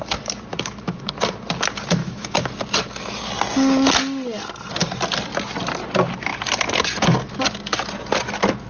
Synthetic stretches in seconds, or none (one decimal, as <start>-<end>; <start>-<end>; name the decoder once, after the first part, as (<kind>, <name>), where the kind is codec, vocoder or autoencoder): 0.5-1.0 (autoencoder, DAC-VAE); 2.0-2.5